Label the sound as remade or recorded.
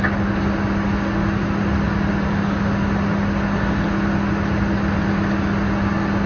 recorded